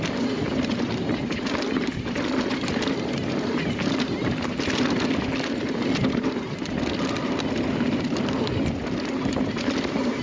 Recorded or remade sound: recorded